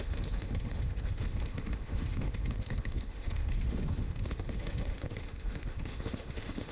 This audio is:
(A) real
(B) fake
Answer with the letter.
B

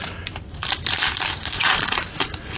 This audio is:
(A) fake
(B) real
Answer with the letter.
A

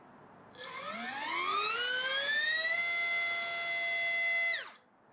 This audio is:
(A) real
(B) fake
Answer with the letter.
A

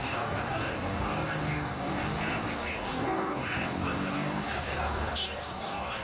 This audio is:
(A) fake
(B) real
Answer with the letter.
A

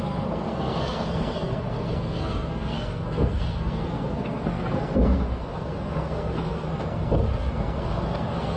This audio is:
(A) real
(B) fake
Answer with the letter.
B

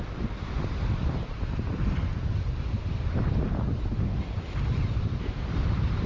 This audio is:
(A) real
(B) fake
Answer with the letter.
A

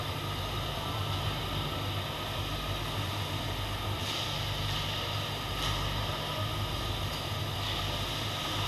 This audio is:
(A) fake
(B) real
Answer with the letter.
B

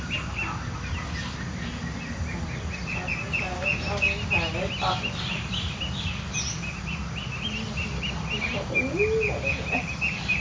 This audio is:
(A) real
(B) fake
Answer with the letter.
A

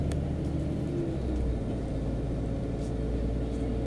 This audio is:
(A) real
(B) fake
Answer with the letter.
A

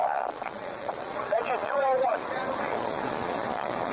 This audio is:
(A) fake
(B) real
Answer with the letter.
A